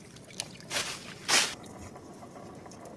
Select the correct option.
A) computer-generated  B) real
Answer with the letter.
B